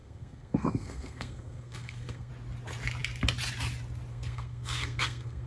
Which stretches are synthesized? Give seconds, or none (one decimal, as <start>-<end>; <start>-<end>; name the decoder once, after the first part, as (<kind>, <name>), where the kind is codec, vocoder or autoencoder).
0.0-2.3 (codec, SNAC); 4.1-5.5